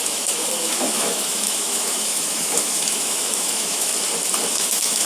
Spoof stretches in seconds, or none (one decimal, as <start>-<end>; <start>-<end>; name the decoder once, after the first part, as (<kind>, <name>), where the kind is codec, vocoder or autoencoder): 0.0-3.9 (autoencoder, DAC-VAE); 4.5-5.1